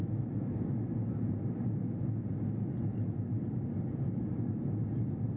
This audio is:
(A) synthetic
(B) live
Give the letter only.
B